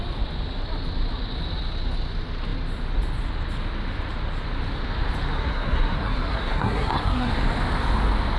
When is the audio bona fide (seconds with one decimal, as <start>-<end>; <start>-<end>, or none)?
0.0-5.4; 7.3-8.4